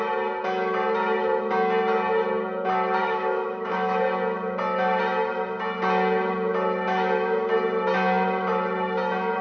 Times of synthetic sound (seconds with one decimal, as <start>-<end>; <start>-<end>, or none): 3.0-4.0

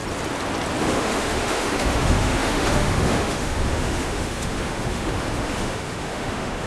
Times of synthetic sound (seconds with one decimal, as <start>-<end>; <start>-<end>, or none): 0.8-6.7